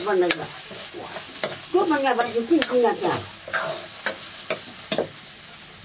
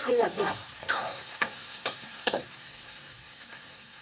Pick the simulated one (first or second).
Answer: second